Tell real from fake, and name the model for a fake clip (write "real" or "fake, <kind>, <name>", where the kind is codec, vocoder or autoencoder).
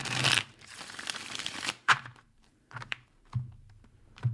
fake, vocoder, BigVGAN v2